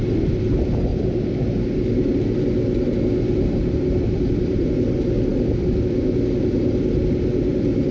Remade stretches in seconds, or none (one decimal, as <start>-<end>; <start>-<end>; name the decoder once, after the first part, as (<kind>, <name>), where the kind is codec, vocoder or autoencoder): 0.0-0.9 (vocoder, BigVGAN v2); 4.0-5.3; 7.5-7.9